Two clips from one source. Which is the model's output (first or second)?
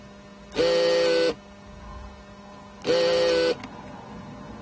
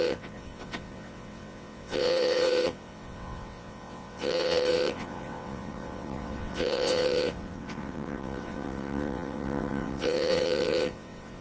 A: second